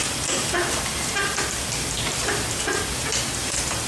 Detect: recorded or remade recorded